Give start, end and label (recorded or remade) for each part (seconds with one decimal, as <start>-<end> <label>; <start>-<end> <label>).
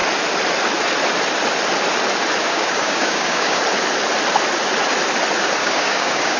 0.0-2.4 recorded; 2.4-3.6 remade; 3.6-5.6 recorded; 5.6-6.4 remade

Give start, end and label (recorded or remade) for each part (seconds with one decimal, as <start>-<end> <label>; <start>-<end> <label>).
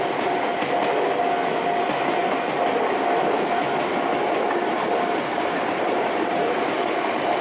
0.0-5.3 recorded; 5.3-7.4 remade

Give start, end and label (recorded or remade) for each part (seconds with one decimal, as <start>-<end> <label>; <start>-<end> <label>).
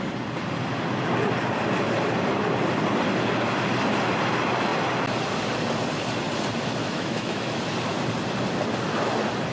0.0-6.8 recorded; 6.8-7.6 remade; 7.6-9.5 recorded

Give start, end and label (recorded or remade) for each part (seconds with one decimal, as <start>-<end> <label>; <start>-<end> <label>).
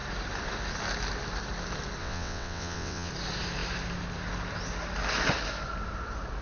0.0-2.0 recorded; 2.0-3.1 remade; 3.1-6.4 recorded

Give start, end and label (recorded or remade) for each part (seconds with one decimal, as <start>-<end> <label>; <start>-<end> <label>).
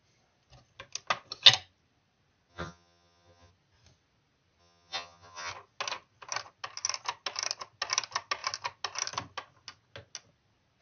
0.0-2.5 recorded; 2.5-3.5 remade; 3.5-4.6 recorded; 4.6-5.5 remade; 5.5-10.8 recorded